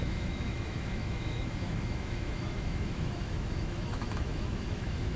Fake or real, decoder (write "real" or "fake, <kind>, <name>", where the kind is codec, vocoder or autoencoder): fake, autoencoder, DAC-VAE